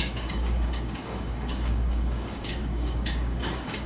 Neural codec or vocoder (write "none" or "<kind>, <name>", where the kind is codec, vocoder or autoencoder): codec, DAC